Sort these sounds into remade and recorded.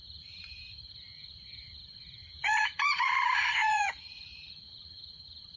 remade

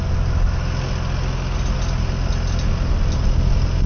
recorded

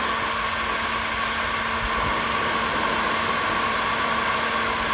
recorded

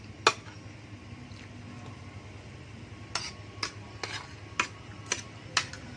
recorded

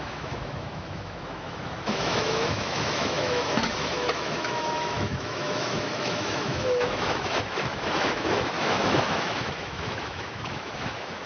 remade